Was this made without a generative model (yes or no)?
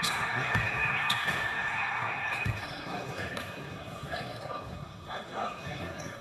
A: no